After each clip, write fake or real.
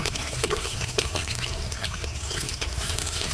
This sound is fake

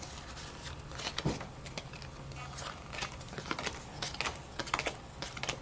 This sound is real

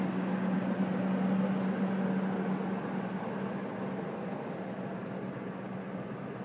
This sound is real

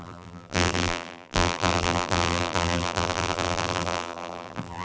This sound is fake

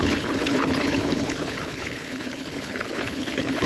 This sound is fake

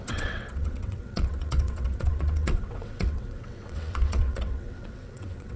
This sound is fake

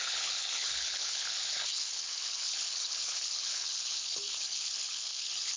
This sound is fake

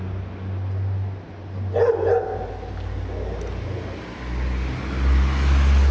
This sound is real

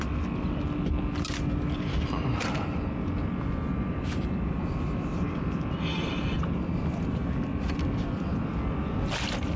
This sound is real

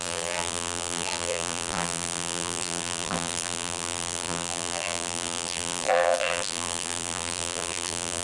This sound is fake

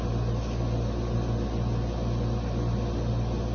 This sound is real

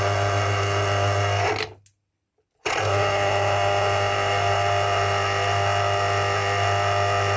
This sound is real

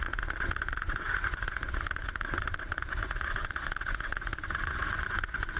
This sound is fake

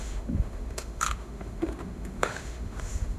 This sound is fake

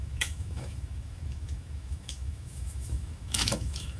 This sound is fake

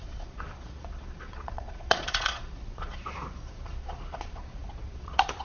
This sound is fake